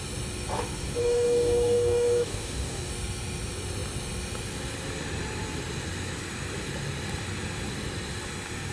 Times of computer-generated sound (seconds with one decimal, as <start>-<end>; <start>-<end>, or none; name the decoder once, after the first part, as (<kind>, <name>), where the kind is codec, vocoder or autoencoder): 1.0-2.9 (codec, DAC)